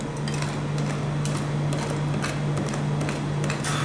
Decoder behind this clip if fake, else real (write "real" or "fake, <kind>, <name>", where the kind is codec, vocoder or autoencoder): real